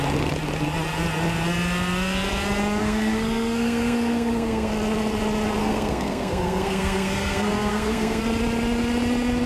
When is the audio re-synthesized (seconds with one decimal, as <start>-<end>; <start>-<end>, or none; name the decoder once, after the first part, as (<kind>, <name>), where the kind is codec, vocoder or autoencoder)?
2.8-4.7 (codec, SNAC); 5.6-8.2